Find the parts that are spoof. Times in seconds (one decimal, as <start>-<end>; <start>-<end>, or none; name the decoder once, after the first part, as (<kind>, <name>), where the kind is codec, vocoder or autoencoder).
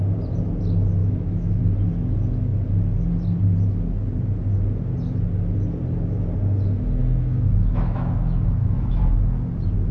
1.0-1.6 (autoencoder, DAC-VAE); 7.0-9.0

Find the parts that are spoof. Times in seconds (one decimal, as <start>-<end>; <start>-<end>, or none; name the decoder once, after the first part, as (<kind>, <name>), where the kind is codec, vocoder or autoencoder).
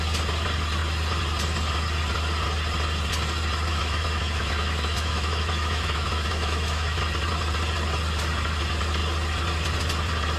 3.7-7.0 (autoencoder, DAC-VAE)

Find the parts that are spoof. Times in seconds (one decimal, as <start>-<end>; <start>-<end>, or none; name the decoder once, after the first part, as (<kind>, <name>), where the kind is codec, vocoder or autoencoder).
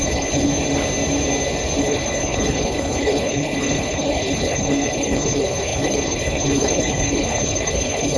0.0-0.5 (codec, HILCodec); 1.8-8.2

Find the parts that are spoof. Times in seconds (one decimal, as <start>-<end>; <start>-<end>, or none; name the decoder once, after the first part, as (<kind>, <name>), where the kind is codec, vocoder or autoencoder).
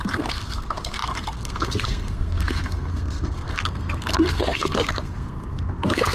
0.0-6.1 (codec, SNAC)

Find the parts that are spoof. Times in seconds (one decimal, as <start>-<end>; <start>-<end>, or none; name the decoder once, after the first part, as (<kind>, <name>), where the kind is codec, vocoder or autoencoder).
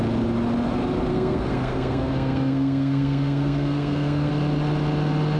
1.1-4.3 (codec, SNAC)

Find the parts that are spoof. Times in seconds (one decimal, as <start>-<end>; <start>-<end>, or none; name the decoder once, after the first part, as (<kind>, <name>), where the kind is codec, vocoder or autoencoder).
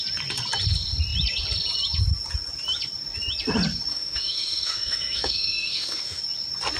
3.9-6.2 (autoencoder, DAC-VAE)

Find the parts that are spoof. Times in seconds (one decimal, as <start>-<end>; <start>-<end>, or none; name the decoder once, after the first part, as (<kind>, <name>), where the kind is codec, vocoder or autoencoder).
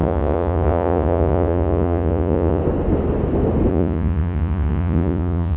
0.0-2.6 (vocoder, Vocos); 3.7-5.6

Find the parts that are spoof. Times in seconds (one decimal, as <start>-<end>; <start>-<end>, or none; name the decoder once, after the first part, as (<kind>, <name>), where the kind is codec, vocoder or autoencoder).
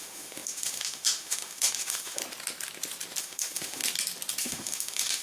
0.0-2.2 (autoencoder, DAC-VAE); 3.2-3.8; 4.4-5.2